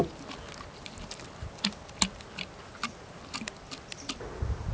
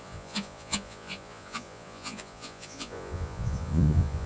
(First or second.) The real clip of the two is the first